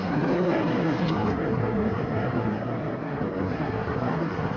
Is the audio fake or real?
fake